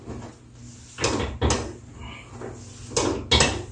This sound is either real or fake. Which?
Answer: real